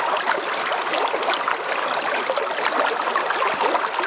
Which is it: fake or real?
real